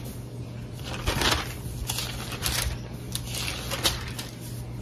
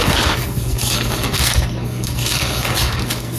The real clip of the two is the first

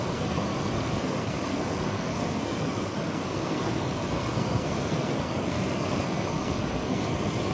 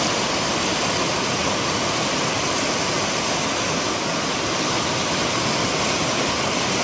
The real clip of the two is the second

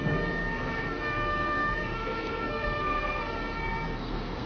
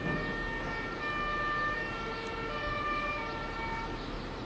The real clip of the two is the second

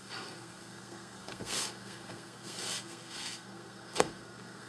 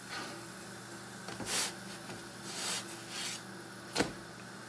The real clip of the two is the second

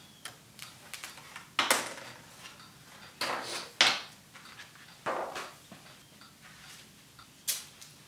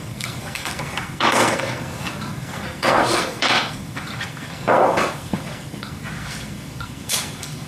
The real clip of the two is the first